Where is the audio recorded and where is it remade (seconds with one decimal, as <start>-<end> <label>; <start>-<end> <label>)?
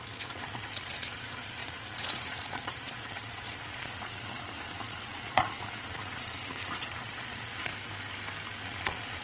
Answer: 0.0-7.7 remade; 7.7-8.6 recorded; 8.6-9.2 remade